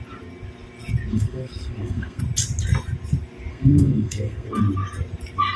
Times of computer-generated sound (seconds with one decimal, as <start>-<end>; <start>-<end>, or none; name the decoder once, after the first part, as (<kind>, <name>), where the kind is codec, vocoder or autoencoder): 1.1-2.2 (codec, SNAC); 3.5-4.6